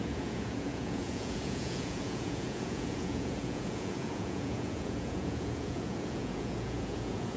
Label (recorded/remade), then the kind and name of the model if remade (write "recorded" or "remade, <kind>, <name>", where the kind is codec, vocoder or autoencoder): remade, vocoder, Vocos